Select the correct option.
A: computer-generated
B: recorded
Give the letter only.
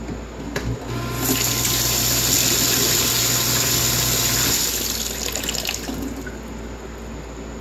B